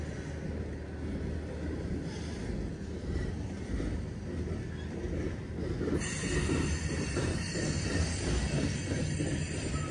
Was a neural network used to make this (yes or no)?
no